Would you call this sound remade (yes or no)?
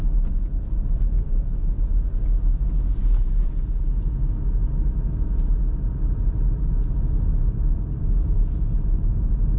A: no